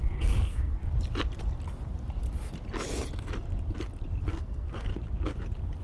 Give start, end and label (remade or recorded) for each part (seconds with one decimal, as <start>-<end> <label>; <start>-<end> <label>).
0.0-0.8 remade; 0.8-4.3 recorded; 4.3-4.9 remade; 4.9-5.8 recorded